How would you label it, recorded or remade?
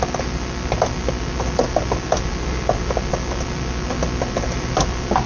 recorded